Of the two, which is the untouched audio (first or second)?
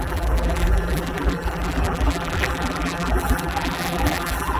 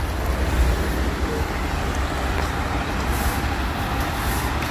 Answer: second